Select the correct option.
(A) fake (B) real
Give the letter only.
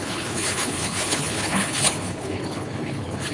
A